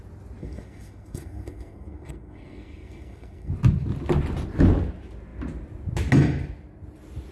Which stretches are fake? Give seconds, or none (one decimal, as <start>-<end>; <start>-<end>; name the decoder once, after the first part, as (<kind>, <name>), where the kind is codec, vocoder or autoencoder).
0.4-3.5 (codec, SNAC)